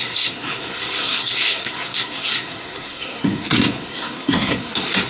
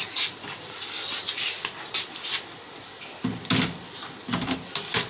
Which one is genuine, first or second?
second